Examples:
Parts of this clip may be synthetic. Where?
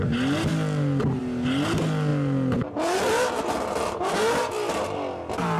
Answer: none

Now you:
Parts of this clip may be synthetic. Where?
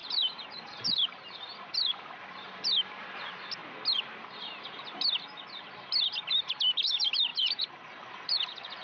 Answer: 0.0-3.6 (vocoder, BigVGAN v2); 6.3-8.8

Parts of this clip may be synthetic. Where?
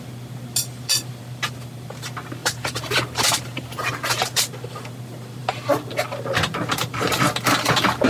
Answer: 2.4-4.5 (vocoder, BigVGAN v2)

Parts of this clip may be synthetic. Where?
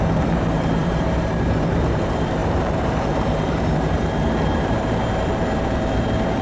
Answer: 0.0-6.4 (vocoder, BigVGAN v2)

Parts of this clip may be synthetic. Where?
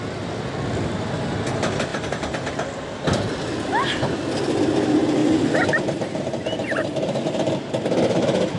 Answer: 1.9-2.5 (vocoder, BigVGAN v2); 5.2-7.7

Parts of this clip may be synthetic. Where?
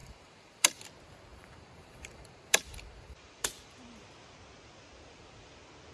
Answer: 0.0-0.8 (vocoder, BigVGAN v2); 1.3-4.0